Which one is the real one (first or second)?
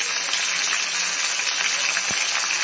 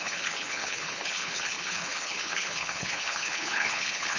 first